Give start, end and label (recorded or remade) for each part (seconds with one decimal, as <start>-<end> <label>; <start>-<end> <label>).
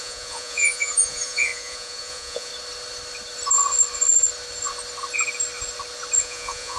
0.0-2.5 remade; 2.5-6.2 recorded; 6.2-6.8 remade